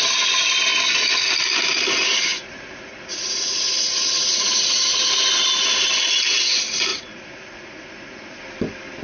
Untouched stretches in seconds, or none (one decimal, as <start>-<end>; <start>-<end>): 0.0-2.3; 5.0-6.9; 8.4-9.0